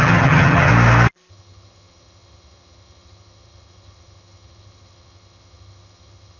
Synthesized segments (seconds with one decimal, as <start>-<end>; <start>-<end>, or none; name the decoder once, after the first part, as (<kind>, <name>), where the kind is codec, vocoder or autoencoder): 0.0-0.7 (vocoder, HiFi-GAN); 1.3-6.4